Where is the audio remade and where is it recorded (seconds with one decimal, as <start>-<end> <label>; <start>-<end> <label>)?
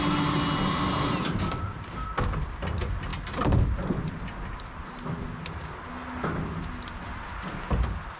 0.0-8.2 recorded